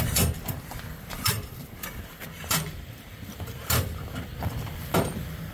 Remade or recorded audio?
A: remade